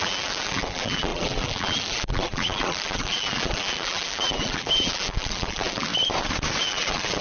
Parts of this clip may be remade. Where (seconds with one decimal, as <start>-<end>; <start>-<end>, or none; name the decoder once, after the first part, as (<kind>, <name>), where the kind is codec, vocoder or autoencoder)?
0.0-5.9 (vocoder, BigVGAN v2); 6.6-7.2